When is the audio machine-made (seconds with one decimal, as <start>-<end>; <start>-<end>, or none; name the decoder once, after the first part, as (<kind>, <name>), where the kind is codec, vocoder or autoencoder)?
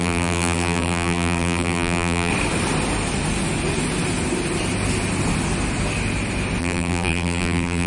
0.0-2.3 (vocoder, BigVGAN v2); 6.6-7.9